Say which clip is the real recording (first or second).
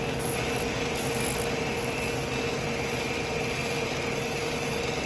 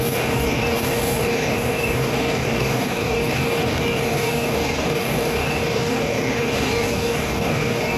first